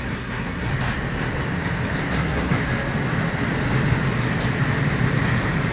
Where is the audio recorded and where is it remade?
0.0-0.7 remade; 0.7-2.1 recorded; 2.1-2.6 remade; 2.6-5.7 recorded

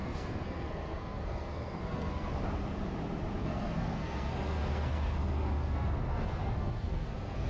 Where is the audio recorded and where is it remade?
0.0-2.3 remade; 2.3-3.4 recorded; 3.4-7.5 remade

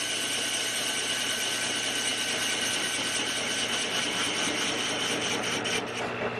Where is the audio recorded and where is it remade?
0.0-6.4 recorded

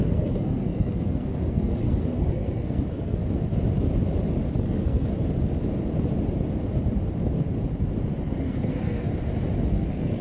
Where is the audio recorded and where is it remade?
0.0-3.2 remade; 3.2-4.6 recorded; 4.6-5.1 remade; 5.1-8.4 recorded; 8.4-9.1 remade; 9.1-9.7 recorded; 9.7-10.2 remade

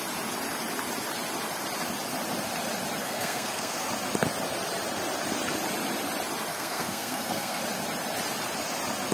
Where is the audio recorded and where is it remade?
0.0-3.0 recorded; 3.0-3.9 remade; 3.9-6.5 recorded; 6.5-7.6 remade; 7.6-9.1 recorded

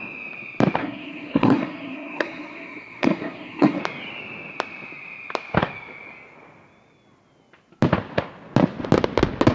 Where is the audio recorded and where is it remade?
0.0-0.8 recorded; 0.8-3.8 remade; 3.8-9.5 recorded